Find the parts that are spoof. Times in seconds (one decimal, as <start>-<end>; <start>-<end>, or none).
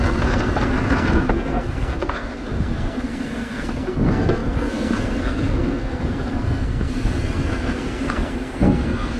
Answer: 0.0-9.2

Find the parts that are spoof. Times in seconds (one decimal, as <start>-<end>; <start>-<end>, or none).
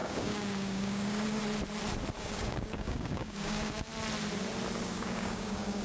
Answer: 0.0-1.4; 2.2-3.9; 4.8-5.8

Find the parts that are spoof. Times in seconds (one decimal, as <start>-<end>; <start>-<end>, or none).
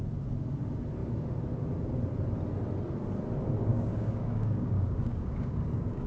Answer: 3.7-6.1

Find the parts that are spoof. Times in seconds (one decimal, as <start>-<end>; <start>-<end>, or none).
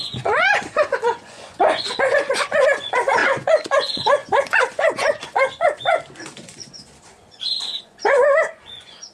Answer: 0.0-9.1